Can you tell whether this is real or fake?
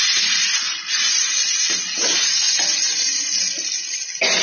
real